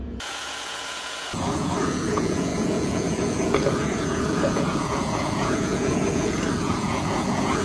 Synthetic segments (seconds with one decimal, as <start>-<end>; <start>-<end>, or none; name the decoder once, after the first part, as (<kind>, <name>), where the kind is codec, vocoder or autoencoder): 0.0-7.6 (vocoder, Vocos)